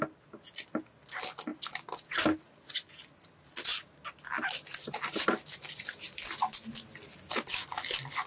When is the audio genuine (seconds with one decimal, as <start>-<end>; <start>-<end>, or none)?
0.0-8.3